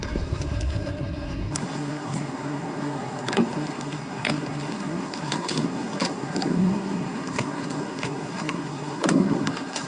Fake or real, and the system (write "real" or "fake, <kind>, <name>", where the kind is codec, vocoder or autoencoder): fake, codec, SNAC